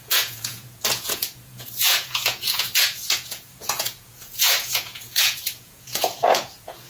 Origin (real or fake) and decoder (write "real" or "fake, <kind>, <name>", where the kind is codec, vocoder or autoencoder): fake, vocoder, Vocos